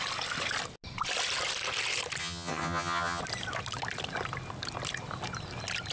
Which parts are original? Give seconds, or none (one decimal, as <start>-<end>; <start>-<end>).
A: 0.0-2.2; 3.2-5.9